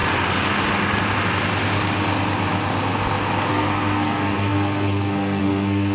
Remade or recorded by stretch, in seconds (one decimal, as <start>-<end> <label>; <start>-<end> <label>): 0.0-3.5 recorded; 3.5-5.9 remade